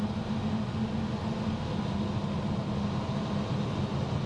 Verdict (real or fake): real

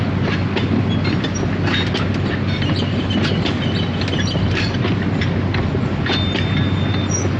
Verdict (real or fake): real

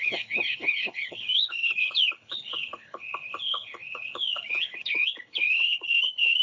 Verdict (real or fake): fake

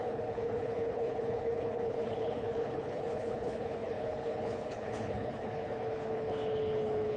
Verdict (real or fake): fake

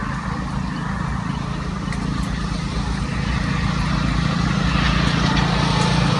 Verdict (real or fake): real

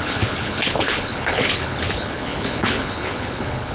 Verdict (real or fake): fake